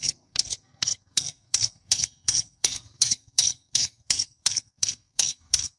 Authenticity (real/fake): fake